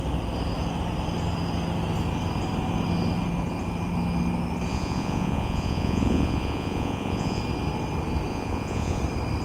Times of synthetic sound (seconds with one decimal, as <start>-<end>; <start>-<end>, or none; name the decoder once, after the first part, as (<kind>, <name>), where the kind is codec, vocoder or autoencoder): 4.7-7.4 (vocoder, Vocos); 8.3-9.0